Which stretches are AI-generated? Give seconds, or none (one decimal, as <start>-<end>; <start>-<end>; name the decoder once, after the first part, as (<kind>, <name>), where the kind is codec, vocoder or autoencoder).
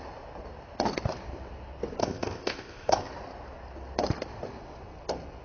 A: 2.0-3.1 (codec, ZipCodec)